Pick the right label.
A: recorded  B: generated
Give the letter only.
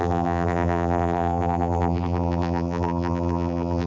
B